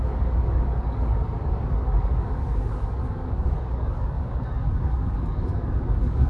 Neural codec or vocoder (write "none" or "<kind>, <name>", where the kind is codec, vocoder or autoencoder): codec, DAC